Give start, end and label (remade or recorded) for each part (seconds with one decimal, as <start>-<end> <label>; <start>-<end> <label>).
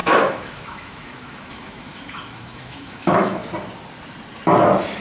0.0-3.4 remade; 3.4-5.0 recorded